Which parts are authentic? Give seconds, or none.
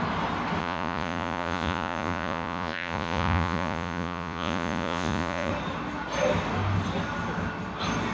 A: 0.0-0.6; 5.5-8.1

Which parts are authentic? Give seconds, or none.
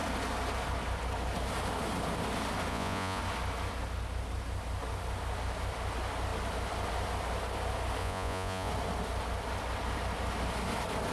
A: 0.0-2.7; 3.2-8.0; 8.7-11.1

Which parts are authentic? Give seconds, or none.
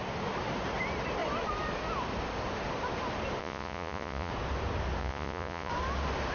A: 0.0-3.4; 4.3-5.0; 5.7-6.3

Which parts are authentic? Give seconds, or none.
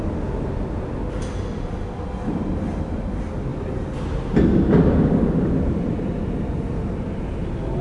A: 0.0-7.8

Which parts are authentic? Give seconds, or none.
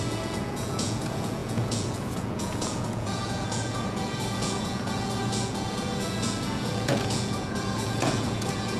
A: none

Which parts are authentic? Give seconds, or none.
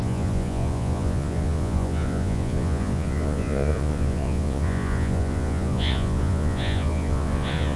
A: none